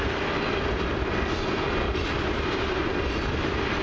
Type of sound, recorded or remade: recorded